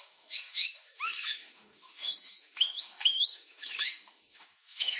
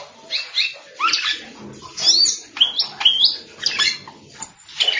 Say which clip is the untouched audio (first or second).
second